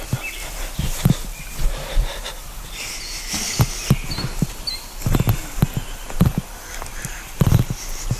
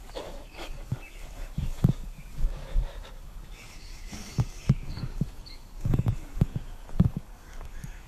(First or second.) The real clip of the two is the first